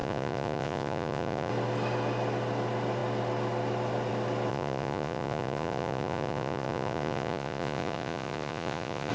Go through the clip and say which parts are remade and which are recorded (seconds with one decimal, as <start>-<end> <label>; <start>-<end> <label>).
0.0-1.5 remade; 1.5-4.5 recorded; 4.5-9.1 remade